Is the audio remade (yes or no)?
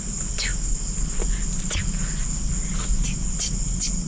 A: no